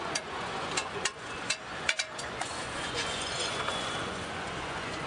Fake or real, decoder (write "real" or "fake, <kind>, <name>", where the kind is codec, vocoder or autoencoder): fake, vocoder, Vocos